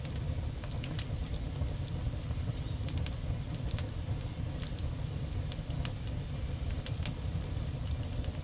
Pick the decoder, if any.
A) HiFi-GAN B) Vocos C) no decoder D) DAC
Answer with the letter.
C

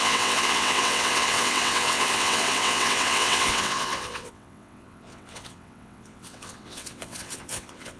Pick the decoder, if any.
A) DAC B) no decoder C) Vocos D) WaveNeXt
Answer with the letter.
D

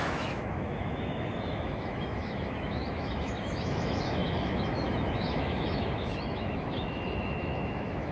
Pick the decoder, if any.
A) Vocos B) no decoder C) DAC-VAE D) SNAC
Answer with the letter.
C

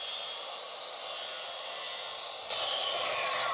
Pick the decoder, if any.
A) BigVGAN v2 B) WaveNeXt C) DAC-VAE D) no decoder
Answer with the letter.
D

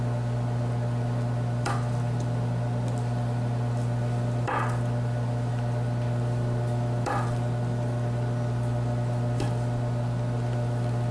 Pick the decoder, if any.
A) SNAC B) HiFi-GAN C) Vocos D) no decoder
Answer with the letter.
D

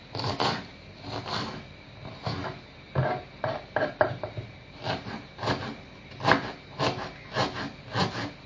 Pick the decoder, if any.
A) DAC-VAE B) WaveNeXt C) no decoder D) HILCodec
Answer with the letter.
C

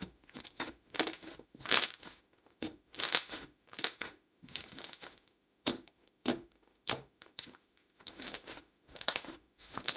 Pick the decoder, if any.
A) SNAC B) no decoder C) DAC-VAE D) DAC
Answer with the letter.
C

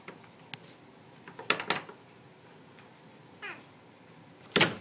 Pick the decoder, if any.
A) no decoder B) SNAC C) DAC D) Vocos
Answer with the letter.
A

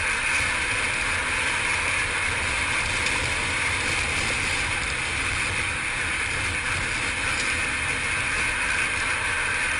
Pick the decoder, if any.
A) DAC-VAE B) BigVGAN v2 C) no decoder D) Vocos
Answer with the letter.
C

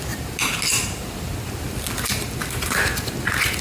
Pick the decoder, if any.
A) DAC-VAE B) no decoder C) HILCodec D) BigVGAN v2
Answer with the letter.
B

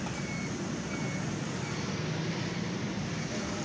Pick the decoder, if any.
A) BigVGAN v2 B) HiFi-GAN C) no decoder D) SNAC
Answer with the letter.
C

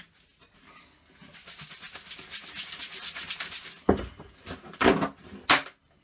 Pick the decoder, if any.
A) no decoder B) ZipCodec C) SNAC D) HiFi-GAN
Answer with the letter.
A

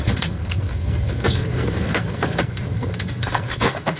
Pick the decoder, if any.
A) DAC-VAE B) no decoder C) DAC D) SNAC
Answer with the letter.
D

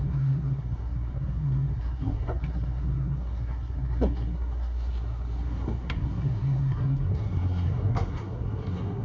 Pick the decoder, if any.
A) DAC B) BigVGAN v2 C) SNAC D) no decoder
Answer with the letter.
C